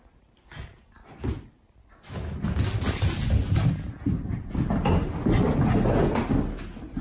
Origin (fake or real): real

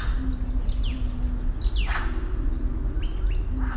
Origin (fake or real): real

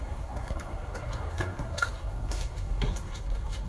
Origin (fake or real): fake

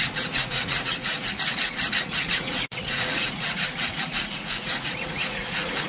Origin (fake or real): fake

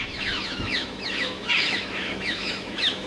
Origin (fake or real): fake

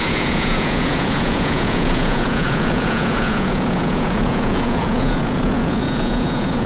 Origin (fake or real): fake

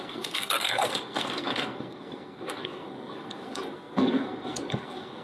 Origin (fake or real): fake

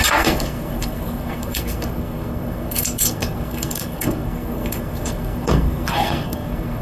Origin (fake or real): fake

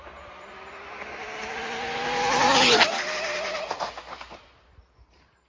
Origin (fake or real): real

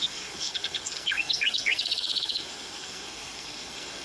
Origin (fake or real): fake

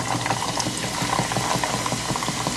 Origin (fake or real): real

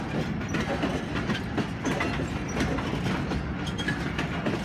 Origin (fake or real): real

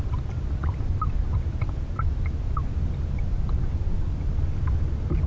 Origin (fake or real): real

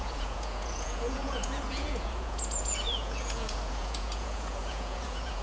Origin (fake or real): fake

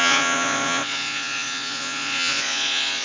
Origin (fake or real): fake